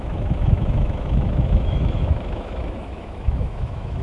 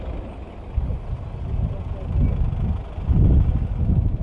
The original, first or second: second